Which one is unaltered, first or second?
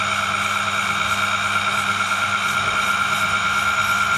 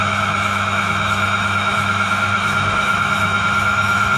first